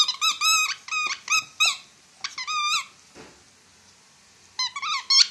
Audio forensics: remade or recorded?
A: recorded